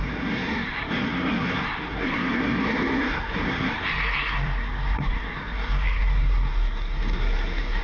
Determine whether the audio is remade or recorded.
remade